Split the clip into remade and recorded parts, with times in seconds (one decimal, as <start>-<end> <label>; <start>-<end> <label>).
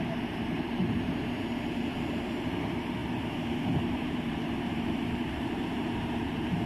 0.0-6.7 remade